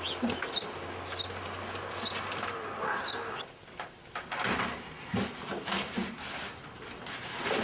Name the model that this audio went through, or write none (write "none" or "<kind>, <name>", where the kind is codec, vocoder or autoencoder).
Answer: none